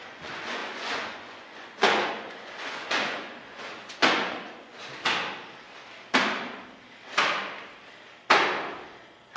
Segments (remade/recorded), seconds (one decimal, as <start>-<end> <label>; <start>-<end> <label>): 0.0-4.7 remade; 4.7-9.4 recorded